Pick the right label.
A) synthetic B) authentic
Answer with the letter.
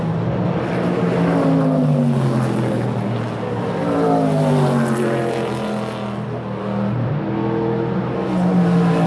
B